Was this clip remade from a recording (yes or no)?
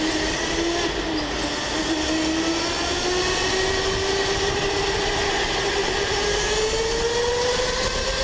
no